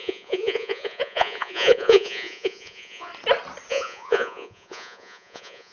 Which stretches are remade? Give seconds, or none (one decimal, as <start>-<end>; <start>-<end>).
0.0-3.1; 3.7-5.7